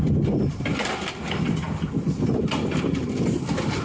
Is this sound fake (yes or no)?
no